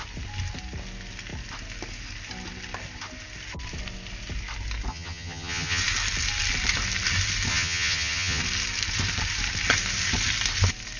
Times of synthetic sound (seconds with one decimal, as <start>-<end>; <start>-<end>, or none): 4.9-5.8; 7.5-8.4